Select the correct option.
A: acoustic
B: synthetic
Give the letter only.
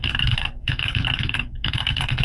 B